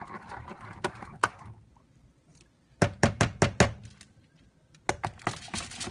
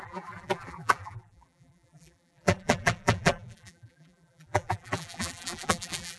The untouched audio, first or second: first